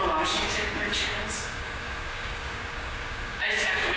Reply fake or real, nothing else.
fake